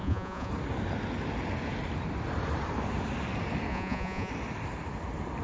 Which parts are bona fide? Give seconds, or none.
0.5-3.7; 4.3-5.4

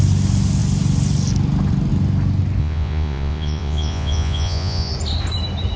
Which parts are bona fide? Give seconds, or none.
0.0-2.6; 4.9-5.8

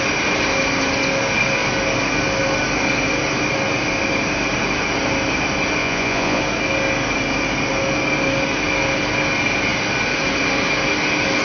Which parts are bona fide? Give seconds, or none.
0.0-5.8; 6.4-11.4

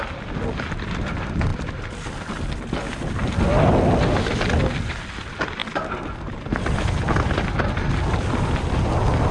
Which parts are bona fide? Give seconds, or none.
0.0-9.3

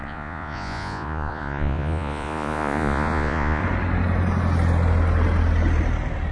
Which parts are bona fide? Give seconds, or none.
3.6-6.3

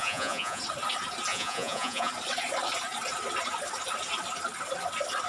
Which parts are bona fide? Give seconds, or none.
0.6-1.3; 2.1-5.3

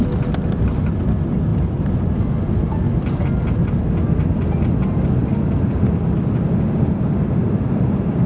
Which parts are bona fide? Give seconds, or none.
0.0-8.3

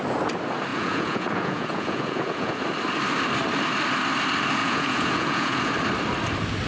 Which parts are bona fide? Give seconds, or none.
0.0-0.7; 2.6-4.6; 5.7-6.7